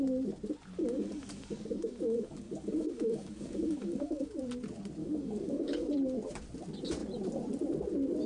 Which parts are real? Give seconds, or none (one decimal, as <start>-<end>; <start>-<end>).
0.0-0.8; 4.4-5.0; 5.9-8.3